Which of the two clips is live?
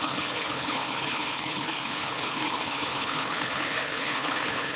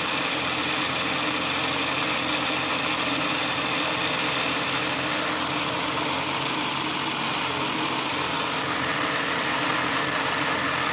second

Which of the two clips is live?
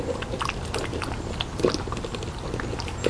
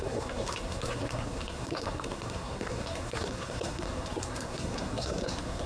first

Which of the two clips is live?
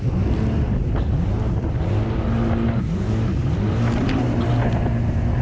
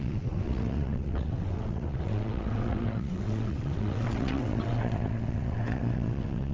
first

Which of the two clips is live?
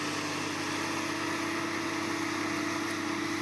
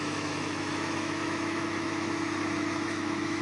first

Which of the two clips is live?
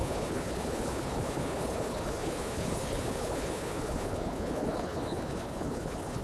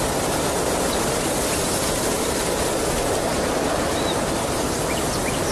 second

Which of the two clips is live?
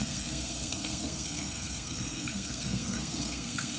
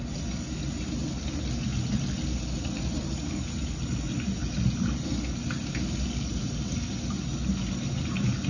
second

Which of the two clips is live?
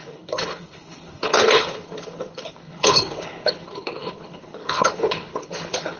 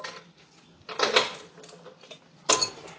second